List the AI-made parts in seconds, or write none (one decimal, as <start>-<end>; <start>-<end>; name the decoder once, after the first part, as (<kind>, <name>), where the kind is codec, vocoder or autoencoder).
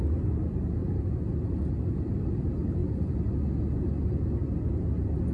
none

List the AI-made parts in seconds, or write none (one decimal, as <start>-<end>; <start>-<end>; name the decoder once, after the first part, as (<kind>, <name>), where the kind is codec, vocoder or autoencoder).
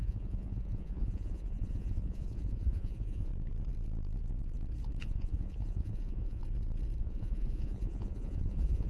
0.0-3.3 (vocoder, Vocos); 5.0-6.4; 7.0-8.9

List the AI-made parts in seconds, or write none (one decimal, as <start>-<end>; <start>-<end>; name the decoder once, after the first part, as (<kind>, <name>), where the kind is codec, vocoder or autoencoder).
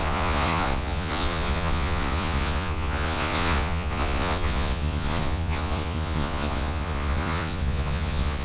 0.0-8.4 (vocoder, Vocos)